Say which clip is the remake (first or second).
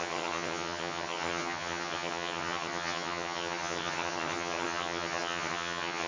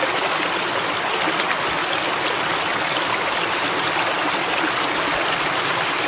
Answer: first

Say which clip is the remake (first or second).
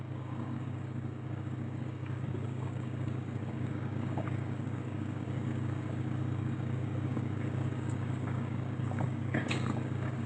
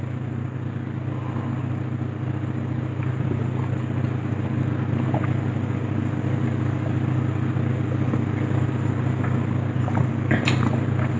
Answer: first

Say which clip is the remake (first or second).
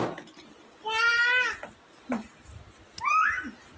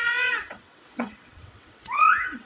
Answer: second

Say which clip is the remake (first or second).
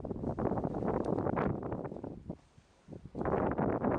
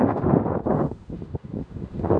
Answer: second